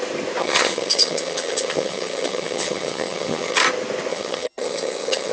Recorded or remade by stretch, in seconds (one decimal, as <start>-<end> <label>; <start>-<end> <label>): 0.0-0.4 recorded; 0.4-3.6 remade; 3.6-4.1 recorded; 4.1-5.3 remade